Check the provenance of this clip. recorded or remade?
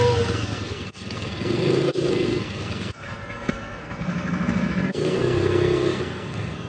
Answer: remade